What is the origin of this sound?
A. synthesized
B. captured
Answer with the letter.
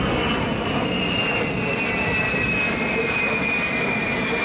B